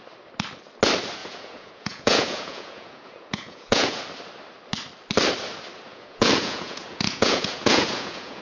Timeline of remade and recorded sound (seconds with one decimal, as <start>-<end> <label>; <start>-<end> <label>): 0.0-1.2 recorded; 1.2-4.0 remade; 4.0-5.9 recorded; 5.9-8.4 remade